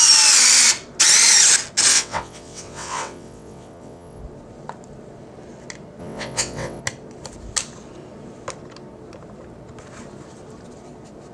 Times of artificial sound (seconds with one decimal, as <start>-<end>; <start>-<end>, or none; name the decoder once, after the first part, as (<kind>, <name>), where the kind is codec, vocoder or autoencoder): 1.9-4.2 (vocoder, WaveNeXt); 6.0-6.8